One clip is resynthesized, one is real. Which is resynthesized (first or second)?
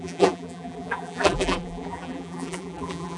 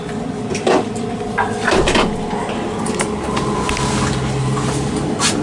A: first